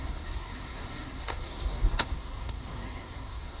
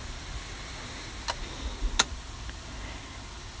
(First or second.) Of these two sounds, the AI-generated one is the first